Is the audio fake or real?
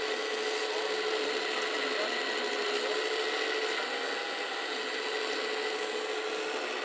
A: real